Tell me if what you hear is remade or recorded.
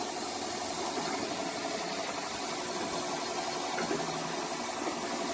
recorded